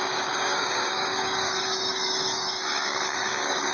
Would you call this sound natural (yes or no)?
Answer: no